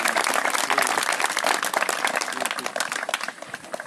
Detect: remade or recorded recorded